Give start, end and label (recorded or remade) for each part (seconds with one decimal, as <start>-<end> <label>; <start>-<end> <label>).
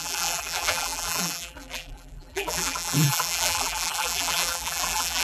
0.0-5.2 remade